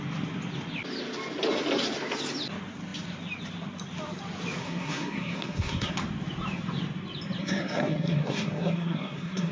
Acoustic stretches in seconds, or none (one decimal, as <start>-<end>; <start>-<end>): 0.0-4.6; 5.9-7.4